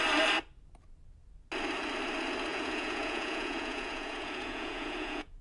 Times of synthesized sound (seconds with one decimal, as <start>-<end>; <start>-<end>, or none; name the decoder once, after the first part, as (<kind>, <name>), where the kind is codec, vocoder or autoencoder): 2.5-5.4 (vocoder, Vocos)